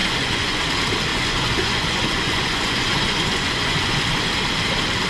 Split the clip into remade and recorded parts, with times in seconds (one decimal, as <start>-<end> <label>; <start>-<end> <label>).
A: 0.0-0.6 remade; 0.6-1.1 recorded; 1.1-4.2 remade; 4.2-5.1 recorded